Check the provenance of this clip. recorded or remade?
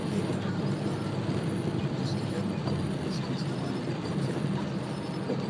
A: recorded